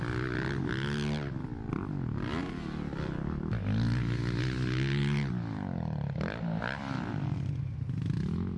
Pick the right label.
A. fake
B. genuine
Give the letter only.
B